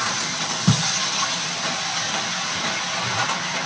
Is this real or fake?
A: real